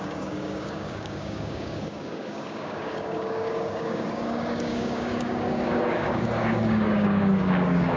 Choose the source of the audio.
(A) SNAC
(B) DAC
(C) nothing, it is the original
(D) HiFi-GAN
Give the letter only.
B